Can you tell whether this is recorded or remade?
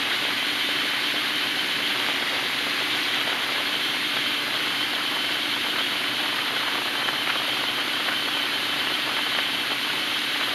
remade